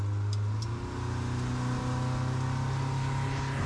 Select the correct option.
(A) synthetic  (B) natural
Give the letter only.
B